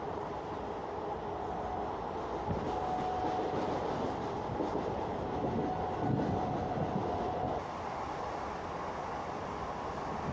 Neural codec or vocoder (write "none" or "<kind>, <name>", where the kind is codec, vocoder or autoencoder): none